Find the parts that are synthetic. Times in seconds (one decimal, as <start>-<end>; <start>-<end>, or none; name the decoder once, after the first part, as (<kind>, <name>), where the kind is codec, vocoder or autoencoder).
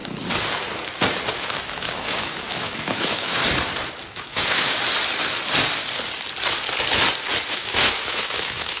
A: 1.3-3.4 (autoencoder, DAC-VAE); 3.9-4.7; 7.5-8.8